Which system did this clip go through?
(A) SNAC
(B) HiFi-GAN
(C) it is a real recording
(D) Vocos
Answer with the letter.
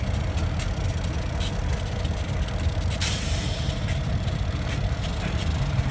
C